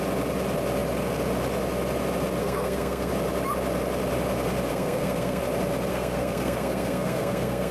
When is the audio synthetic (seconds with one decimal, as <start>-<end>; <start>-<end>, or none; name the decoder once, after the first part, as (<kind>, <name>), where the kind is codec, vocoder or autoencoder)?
2.4-3.1 (codec, SNAC); 4.7-5.4; 5.9-7.7